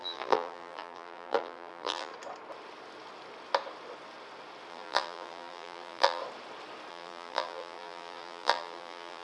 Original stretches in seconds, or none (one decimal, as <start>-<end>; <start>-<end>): 2.1-4.7; 6.2-6.9

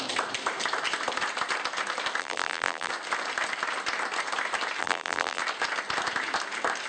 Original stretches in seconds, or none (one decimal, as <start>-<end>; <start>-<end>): 0.0-2.2; 2.9-4.8; 5.4-6.9

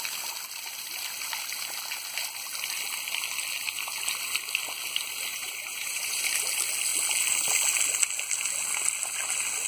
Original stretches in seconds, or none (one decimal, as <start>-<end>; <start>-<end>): 0.0-5.3; 6.2-9.7

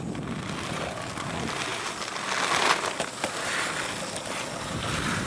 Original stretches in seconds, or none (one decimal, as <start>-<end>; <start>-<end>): 0.0-1.7; 3.7-5.3

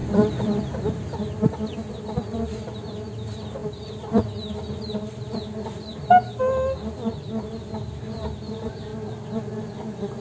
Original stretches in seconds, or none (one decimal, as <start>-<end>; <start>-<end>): 0.6-8.9; 9.6-10.2